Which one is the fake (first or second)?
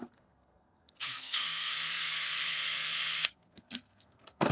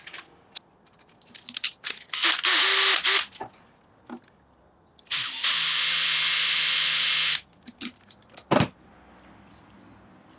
first